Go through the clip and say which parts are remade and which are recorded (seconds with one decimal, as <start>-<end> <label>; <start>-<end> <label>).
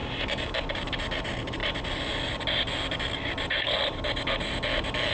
0.0-5.1 recorded